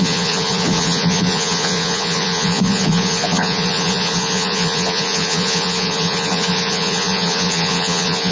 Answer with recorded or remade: remade